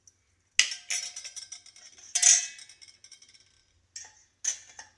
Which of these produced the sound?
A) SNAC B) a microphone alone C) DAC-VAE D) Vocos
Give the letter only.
B